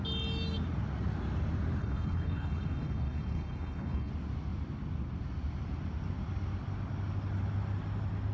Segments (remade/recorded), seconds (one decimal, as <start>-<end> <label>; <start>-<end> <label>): 0.0-1.8 recorded; 1.8-4.1 remade; 4.1-8.3 recorded